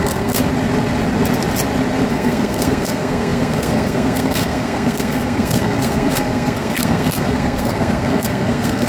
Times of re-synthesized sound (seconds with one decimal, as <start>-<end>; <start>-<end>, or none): 0.0-0.4; 2.1-8.9